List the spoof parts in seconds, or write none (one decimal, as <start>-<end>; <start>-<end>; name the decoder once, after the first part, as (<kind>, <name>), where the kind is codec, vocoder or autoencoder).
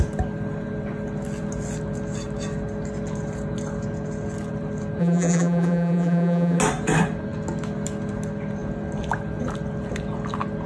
5.0-6.6 (vocoder, BigVGAN v2)